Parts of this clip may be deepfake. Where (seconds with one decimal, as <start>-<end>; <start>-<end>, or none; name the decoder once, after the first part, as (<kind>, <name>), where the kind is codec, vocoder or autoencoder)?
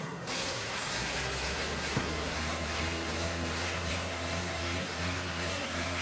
0.0-6.0 (codec, SNAC)